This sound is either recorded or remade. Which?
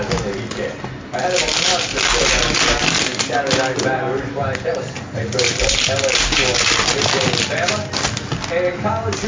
recorded